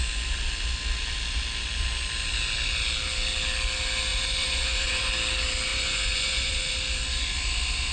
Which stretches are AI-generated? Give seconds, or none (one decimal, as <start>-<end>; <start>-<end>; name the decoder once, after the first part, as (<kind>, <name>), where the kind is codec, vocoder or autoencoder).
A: 4.1-5.1 (vocoder, Vocos); 5.7-6.7